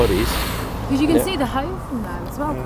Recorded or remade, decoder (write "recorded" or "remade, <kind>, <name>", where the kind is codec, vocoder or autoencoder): recorded